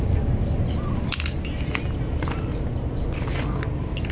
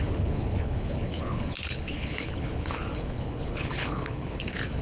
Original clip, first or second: first